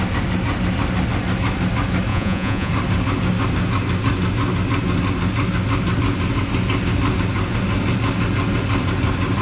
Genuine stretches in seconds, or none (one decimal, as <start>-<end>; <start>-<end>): 0.0-2.1; 2.7-9.4